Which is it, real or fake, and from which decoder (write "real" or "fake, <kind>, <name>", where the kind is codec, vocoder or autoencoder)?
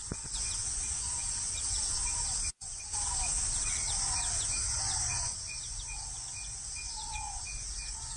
fake, vocoder, Vocos